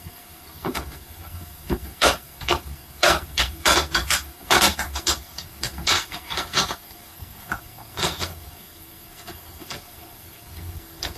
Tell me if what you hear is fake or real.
fake